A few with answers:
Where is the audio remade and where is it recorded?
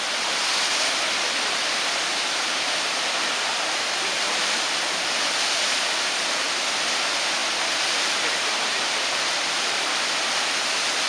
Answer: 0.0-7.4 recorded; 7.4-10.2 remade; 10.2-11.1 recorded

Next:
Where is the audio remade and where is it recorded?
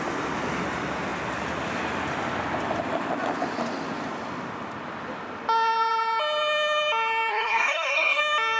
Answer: 0.0-7.3 recorded; 7.3-8.2 remade; 8.2-8.6 recorded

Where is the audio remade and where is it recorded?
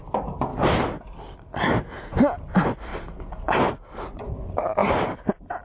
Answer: 0.0-0.5 recorded; 0.5-2.5 remade; 2.5-5.6 recorded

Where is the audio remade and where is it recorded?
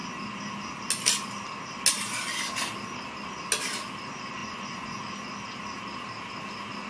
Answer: 0.0-4.4 recorded; 4.4-5.0 remade; 5.0-6.9 recorded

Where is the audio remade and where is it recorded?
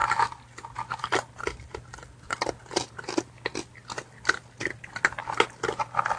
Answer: 0.0-2.9 remade; 2.9-6.2 recorded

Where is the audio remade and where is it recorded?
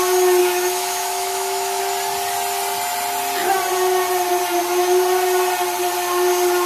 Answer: 0.0-0.4 recorded; 0.4-1.8 remade; 1.8-6.7 recorded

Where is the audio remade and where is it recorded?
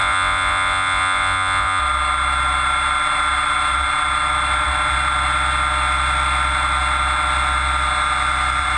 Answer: 0.0-1.8 remade; 1.8-8.8 recorded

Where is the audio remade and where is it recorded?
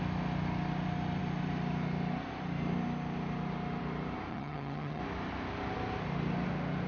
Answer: 0.0-4.3 recorded; 4.3-5.0 remade; 5.0-6.9 recorded